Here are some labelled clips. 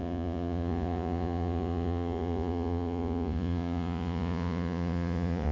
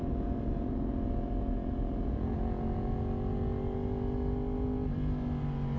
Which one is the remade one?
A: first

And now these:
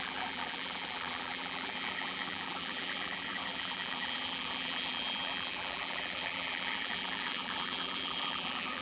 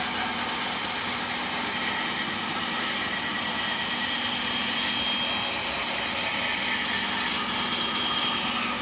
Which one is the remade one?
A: first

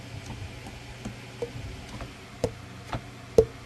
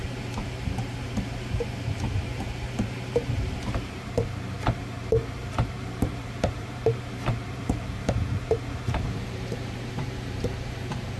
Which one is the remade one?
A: second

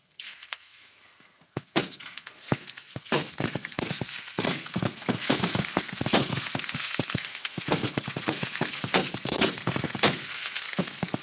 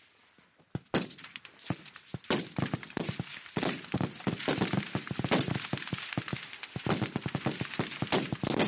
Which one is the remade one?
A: first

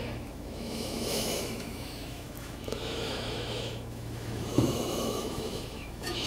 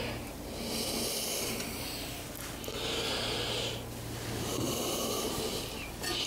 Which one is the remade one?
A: first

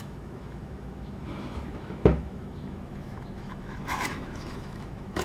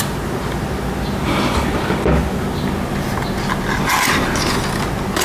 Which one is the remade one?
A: first